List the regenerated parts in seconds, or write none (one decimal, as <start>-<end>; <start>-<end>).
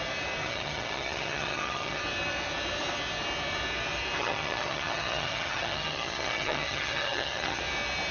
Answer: 0.4-2.0; 4.2-7.6